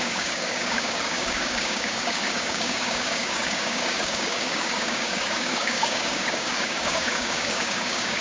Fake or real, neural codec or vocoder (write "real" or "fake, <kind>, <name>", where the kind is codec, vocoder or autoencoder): fake, codec, DAC